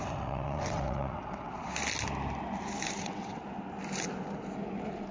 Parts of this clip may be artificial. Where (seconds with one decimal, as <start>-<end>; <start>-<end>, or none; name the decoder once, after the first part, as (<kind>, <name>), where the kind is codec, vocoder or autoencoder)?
0.0-1.7 (vocoder, WaveNeXt); 3.0-3.4